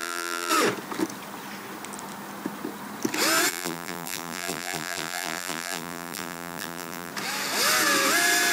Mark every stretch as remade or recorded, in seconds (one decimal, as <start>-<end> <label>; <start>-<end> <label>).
0.0-0.5 remade; 0.5-3.5 recorded; 3.5-7.1 remade; 7.1-8.5 recorded